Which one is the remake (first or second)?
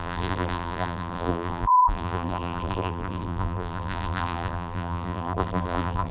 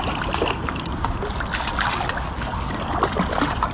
first